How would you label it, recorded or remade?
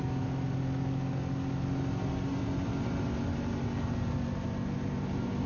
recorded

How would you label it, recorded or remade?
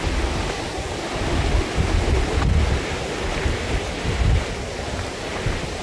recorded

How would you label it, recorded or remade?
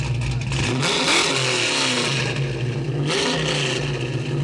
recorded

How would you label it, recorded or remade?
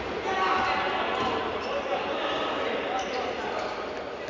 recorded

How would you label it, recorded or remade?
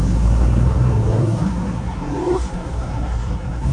remade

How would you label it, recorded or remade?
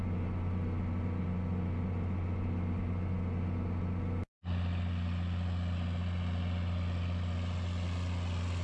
recorded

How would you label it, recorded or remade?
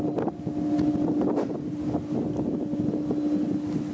recorded